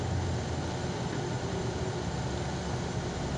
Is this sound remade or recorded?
recorded